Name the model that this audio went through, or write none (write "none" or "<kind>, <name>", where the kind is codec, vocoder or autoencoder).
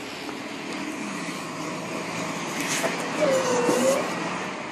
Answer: none